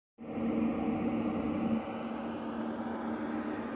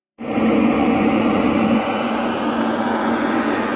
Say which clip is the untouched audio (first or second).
first